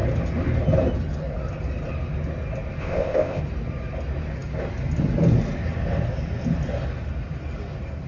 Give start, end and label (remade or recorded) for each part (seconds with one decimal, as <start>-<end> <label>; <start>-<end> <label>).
0.0-2.8 recorded; 2.8-3.4 remade; 3.4-8.1 recorded